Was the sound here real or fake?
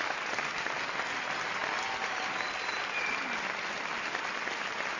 real